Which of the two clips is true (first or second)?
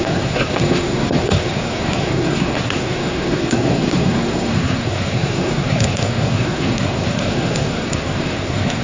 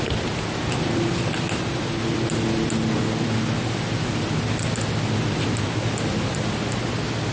second